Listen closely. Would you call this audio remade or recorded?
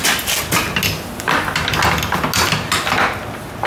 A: recorded